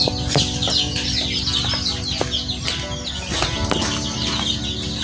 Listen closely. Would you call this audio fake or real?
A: real